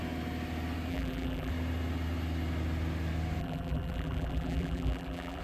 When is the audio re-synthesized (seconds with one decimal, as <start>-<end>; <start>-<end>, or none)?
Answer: 0.9-1.5; 3.4-5.4